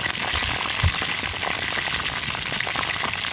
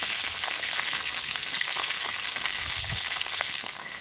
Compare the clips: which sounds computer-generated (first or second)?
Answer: second